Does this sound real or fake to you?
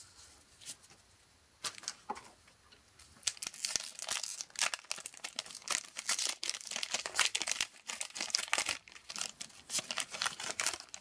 real